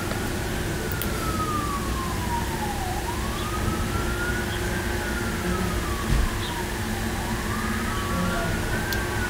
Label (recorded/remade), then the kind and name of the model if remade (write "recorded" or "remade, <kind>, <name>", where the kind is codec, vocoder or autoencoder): recorded